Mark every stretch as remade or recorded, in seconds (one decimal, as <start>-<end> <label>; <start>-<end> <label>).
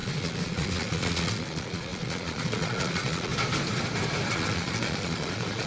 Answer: 0.0-3.3 remade; 3.3-4.3 recorded; 4.3-5.7 remade